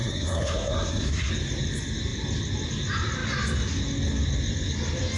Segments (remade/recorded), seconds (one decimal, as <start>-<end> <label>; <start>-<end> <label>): 0.0-1.3 remade; 1.3-5.2 recorded